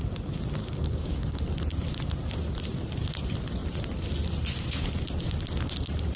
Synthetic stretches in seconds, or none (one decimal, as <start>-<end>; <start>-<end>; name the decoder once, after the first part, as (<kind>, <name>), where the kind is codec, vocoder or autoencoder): 0.6-1.4 (codec, DAC)